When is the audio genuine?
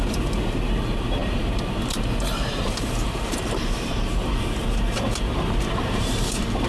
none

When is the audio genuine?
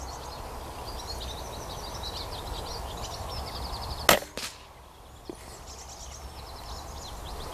0.0-7.5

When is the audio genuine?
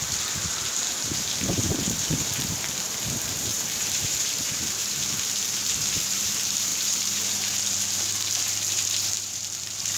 none